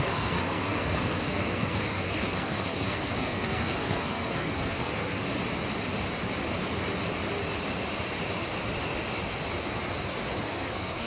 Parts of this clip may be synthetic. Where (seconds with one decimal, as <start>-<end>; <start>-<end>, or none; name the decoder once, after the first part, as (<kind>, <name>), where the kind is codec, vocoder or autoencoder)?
0.0-5.3 (codec, SNAC); 10.4-11.1